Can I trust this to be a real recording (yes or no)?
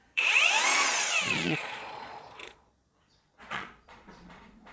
no